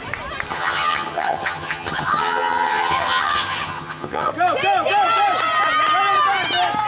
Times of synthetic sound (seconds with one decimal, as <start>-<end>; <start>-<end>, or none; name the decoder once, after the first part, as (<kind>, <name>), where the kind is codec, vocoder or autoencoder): 0.5-4.3 (vocoder, HiFi-GAN)